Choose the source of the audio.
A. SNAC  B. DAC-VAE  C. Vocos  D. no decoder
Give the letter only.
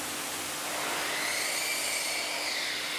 D